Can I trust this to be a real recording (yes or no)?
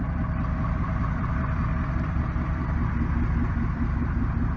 no